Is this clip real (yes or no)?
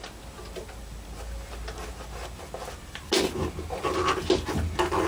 yes